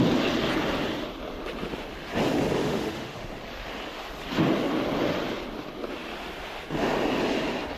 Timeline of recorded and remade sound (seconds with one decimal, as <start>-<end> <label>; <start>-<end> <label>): 0.0-2.6 recorded; 2.6-3.3 remade; 3.3-7.8 recorded

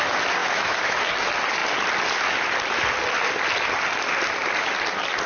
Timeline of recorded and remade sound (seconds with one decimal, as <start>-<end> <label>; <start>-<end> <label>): 0.0-0.4 recorded; 0.4-1.0 remade; 1.0-5.3 recorded

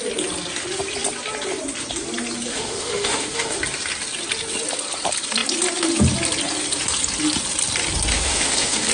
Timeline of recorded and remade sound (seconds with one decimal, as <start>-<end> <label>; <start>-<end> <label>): 0.0-2.5 recorded; 2.5-3.6 remade; 3.6-8.1 recorded; 8.1-8.9 remade

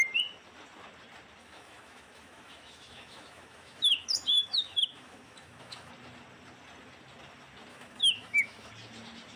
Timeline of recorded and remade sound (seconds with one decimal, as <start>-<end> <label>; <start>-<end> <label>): 0.0-1.4 recorded; 1.4-5.9 remade; 5.9-7.7 recorded; 7.7-8.7 remade; 8.7-9.4 recorded

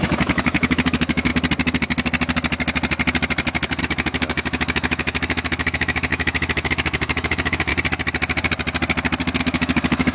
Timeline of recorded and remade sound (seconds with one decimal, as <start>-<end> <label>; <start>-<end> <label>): 0.0-1.3 remade; 1.3-3.8 recorded; 3.8-7.7 remade; 7.7-9.4 recorded; 9.4-10.1 remade

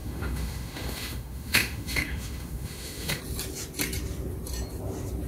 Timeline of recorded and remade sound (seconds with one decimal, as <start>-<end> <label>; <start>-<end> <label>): 0.0-3.2 remade; 3.2-5.3 recorded

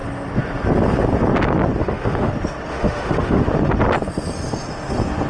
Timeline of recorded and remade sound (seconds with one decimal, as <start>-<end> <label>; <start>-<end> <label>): 0.0-1.8 recorded; 1.8-2.3 remade; 2.3-2.7 recorded; 2.7-3.4 remade; 3.4-5.3 recorded